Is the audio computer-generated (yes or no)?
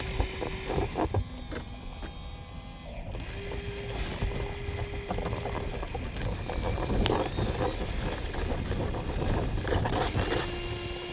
no